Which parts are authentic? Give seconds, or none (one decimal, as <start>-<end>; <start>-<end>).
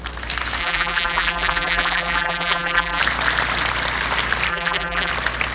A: 0.0-0.6; 3.0-4.5; 5.1-5.5